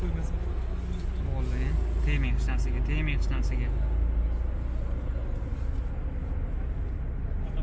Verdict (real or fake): real